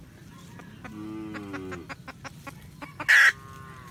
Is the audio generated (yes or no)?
no